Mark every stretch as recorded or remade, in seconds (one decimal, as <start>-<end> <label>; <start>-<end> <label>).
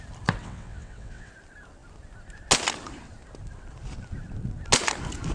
0.0-0.4 recorded; 0.4-1.3 remade; 1.3-5.3 recorded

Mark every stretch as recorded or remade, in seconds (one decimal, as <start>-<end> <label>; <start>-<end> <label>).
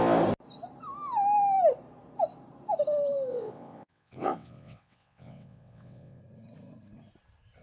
0.0-3.3 recorded; 3.3-6.2 remade; 6.2-7.6 recorded